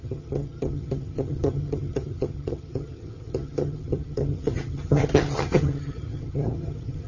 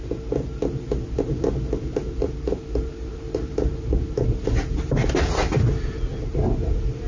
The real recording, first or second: second